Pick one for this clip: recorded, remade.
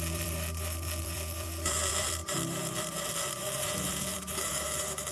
remade